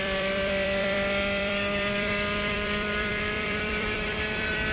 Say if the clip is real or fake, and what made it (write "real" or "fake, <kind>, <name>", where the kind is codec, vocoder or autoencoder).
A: fake, vocoder, BigVGAN v2